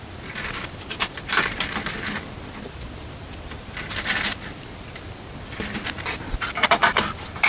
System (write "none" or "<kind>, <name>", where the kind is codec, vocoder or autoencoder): none